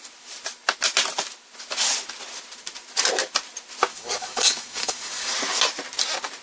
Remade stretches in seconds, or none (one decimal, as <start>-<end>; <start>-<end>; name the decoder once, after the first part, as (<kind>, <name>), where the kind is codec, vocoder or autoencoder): 3.9-5.3 (codec, DAC)